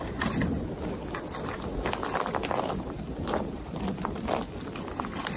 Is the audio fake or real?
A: real